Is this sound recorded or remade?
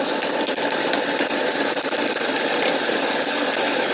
recorded